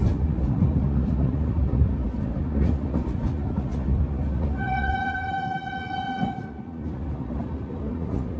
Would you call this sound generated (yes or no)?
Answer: yes